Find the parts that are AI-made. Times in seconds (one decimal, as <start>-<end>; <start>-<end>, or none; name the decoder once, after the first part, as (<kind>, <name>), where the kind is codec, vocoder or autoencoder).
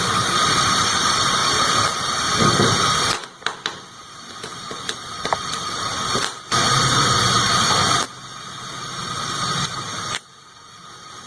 0.0-1.4 (vocoder, BigVGAN v2); 2.3-4.5; 5.2-6.1; 6.9-7.8; 9.2-11.3